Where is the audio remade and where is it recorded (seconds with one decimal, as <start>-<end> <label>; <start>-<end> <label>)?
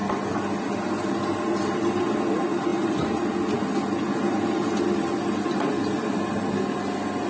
0.0-7.3 recorded